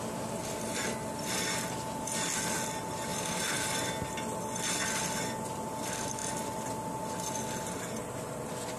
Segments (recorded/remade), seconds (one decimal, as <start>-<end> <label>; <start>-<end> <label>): 0.0-3.1 recorded; 3.1-3.7 remade; 3.7-8.8 recorded

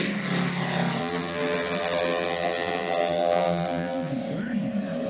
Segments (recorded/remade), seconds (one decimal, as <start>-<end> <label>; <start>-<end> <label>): 0.0-1.0 recorded; 1.0-4.1 remade; 4.1-5.1 recorded